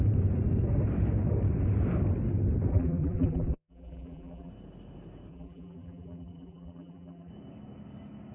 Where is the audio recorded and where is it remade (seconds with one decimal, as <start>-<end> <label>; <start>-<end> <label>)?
0.0-2.7 recorded; 2.7-4.5 remade; 4.5-5.3 recorded; 5.3-7.3 remade; 7.3-8.3 recorded